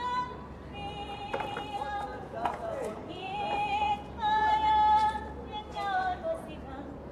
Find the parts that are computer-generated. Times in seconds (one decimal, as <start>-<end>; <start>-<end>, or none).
2.1-4.7